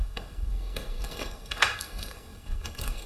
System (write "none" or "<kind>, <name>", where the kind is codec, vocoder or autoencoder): codec, SNAC